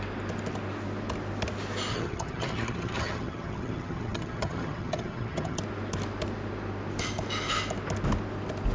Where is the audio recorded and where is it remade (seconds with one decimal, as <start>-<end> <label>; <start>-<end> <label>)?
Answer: 0.0-1.9 recorded; 1.9-5.6 remade; 5.6-8.7 recorded